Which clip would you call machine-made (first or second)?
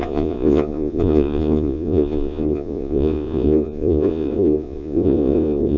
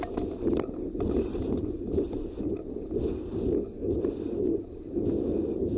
first